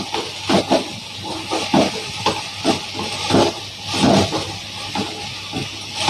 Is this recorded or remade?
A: recorded